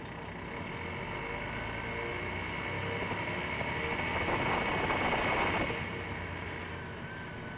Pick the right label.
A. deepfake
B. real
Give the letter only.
B